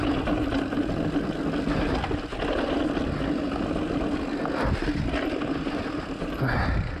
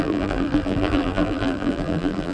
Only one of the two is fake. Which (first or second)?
second